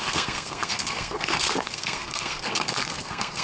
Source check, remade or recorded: remade